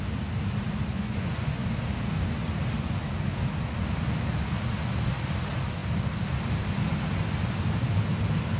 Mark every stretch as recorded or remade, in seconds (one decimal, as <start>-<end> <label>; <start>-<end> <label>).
0.0-0.9 recorded; 0.9-1.7 remade; 1.7-8.6 recorded